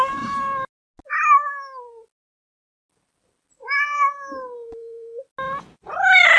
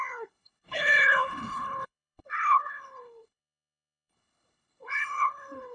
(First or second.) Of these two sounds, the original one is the first